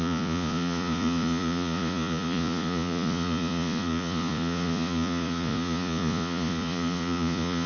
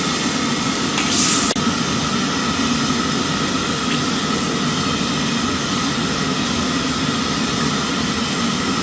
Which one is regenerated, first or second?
first